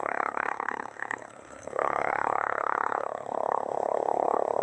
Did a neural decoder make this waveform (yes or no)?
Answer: yes